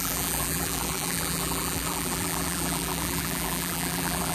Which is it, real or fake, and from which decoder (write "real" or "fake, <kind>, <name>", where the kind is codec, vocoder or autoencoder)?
fake, vocoder, BigVGAN v2